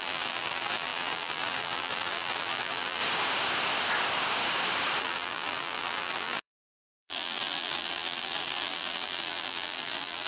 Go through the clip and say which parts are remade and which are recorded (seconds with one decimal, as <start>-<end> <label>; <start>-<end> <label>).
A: 0.0-3.0 remade; 3.0-5.0 recorded; 5.0-10.3 remade